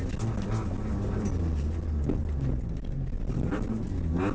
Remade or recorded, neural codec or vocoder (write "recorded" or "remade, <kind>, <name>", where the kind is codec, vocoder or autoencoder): recorded